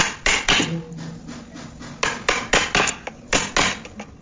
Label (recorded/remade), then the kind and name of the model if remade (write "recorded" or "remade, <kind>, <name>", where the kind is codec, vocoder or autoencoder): recorded